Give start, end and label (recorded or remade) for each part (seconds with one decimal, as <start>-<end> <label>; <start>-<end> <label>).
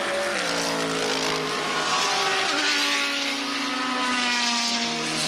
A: 0.0-5.3 recorded